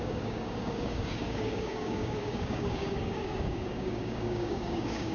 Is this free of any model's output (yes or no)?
no